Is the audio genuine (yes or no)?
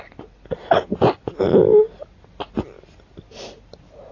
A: yes